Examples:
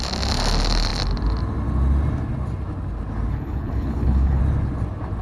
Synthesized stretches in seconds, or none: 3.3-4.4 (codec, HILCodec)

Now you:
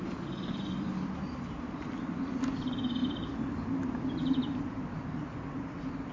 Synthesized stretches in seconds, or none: none

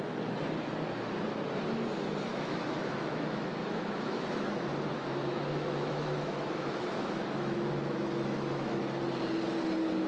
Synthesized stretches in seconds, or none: 2.3-4.5 (autoencoder, DAC-VAE); 4.9-8.8

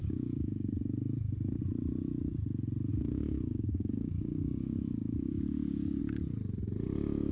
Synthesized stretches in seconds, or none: 0.0-0.7 (codec, DAC); 2.9-6.0

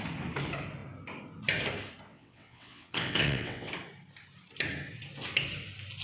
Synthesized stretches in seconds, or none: 2.1-3.7 (vocoder, WaveNeXt)

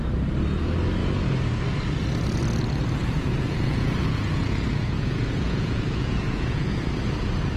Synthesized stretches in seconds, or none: 3.0-6.8 (vocoder, Vocos)

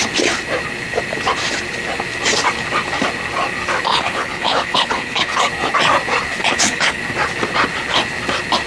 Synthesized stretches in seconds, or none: 3.9-5.4 (codec, HILCodec); 6.4-7.0